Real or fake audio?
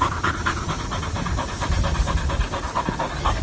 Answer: real